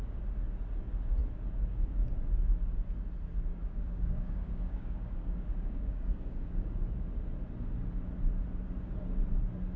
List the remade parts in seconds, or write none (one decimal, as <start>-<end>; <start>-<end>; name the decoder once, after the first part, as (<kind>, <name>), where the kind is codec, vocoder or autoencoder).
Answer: 3.5-6.7 (codec, DAC)